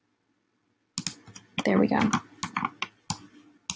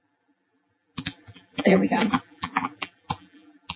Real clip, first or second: first